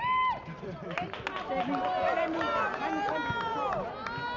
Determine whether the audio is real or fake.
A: real